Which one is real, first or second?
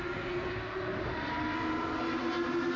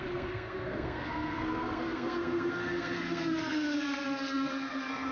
first